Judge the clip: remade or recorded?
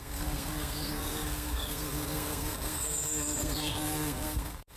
remade